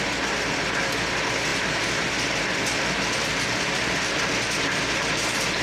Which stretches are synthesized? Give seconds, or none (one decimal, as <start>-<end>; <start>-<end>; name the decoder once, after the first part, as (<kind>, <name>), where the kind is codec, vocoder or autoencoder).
none

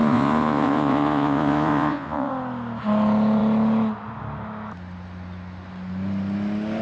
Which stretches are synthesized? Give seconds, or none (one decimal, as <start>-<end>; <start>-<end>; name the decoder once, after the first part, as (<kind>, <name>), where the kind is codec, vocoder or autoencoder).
0.0-2.3 (vocoder, Vocos)

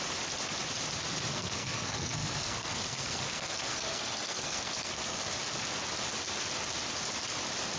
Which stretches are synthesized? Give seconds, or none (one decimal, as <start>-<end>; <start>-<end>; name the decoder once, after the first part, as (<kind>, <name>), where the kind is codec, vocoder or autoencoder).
1.3-5.2 (codec, SNAC)

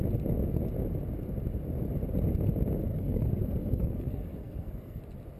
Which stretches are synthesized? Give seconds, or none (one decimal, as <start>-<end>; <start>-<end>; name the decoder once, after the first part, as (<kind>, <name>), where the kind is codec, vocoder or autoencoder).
2.9-5.0 (codec, SNAC)

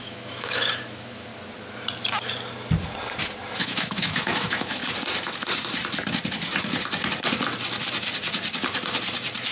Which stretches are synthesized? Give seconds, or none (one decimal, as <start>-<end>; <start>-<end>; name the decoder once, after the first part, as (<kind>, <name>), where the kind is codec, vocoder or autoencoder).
0.0-1.3 (autoencoder, DAC-VAE); 3.6-4.8

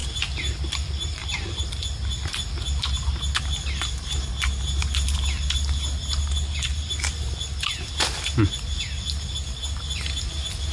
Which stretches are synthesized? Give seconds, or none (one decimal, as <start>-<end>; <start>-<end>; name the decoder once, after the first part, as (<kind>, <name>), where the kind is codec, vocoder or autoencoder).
0.0-1.7 (vocoder, BigVGAN v2); 6.7-7.3

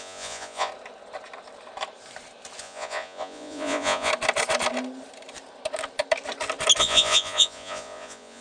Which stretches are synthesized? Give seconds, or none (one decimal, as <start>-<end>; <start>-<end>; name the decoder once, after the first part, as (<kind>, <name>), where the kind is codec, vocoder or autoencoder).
0.0-0.7 (vocoder, Vocos); 2.6-4.1; 6.8-8.4